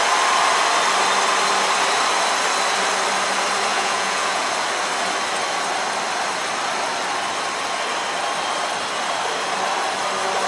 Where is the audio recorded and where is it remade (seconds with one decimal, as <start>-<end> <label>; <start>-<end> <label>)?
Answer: 0.0-3.7 recorded; 3.7-4.5 remade; 4.5-10.5 recorded